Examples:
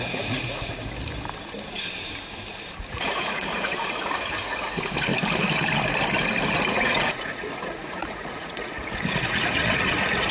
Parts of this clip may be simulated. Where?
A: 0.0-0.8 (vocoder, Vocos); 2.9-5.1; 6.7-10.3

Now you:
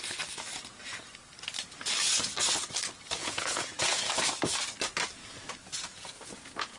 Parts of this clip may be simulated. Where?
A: 3.2-4.1 (vocoder, Vocos); 5.9-6.8

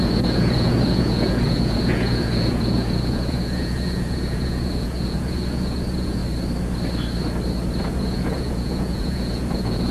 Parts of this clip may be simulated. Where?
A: 0.0-6.2 (vocoder, Vocos); 7.8-9.9